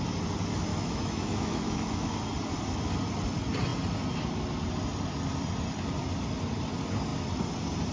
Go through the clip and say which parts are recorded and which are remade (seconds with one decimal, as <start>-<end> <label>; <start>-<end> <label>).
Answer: 0.0-0.7 recorded; 0.7-2.1 remade; 2.1-7.9 recorded